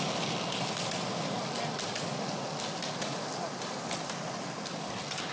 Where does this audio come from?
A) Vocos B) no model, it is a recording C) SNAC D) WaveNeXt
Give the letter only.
B